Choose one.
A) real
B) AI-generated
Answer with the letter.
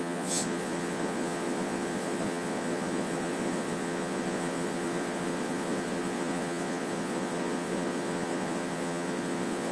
B